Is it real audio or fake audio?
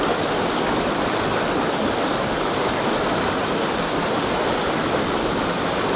real